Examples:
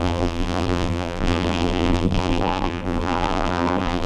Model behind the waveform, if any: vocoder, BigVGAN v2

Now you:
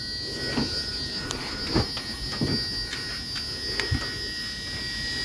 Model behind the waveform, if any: none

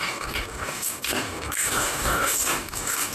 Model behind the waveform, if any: codec, DAC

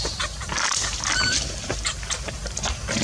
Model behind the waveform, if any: none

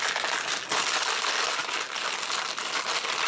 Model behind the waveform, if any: none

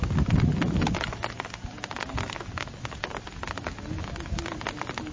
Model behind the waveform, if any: none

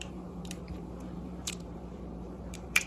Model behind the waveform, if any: vocoder, BigVGAN v2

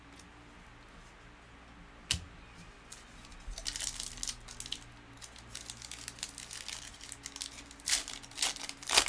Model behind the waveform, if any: none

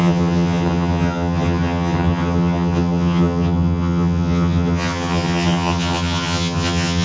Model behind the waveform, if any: vocoder, HiFi-GAN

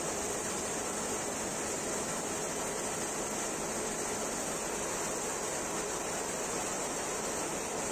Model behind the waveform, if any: none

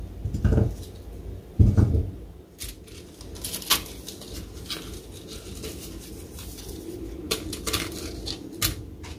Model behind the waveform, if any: none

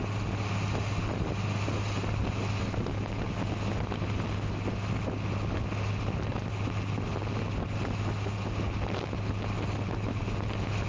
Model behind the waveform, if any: none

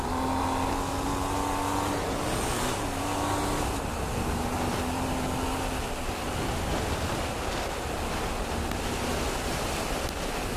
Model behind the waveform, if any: none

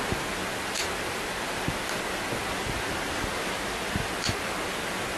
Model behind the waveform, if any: none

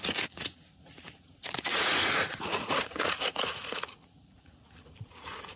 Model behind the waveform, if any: vocoder, Vocos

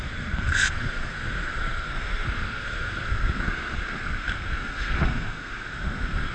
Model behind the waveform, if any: codec, SNAC